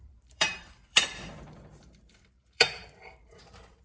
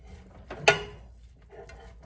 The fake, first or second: first